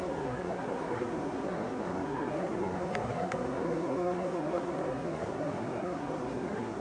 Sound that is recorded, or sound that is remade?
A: remade